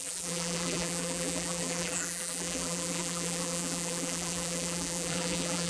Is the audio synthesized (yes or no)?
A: yes